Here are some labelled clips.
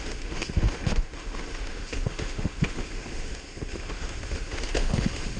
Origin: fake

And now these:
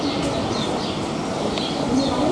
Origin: real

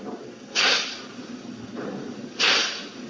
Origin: real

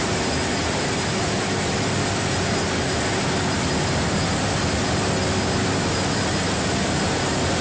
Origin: real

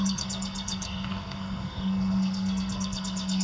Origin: fake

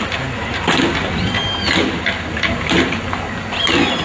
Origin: real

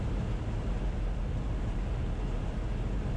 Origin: real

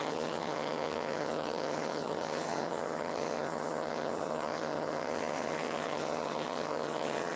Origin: fake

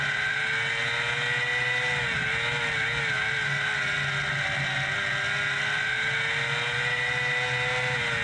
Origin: real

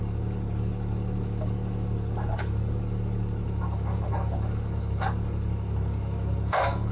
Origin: fake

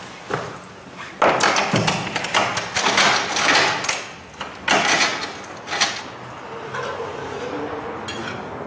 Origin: real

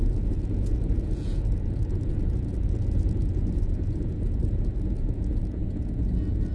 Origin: fake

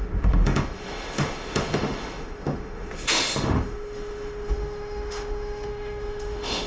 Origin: fake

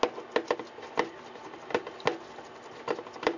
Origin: real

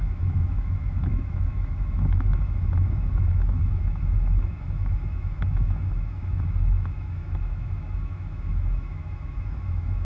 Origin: fake